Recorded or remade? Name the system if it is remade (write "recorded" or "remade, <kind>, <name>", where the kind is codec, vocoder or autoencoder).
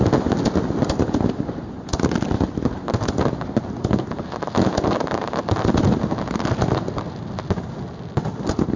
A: recorded